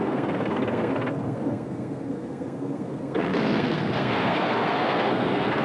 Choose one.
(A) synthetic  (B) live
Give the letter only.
A